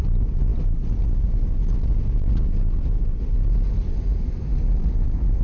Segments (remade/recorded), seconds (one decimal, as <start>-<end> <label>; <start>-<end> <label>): 0.0-5.4 recorded